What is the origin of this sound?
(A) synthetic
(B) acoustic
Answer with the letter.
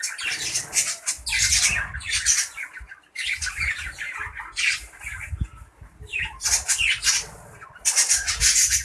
B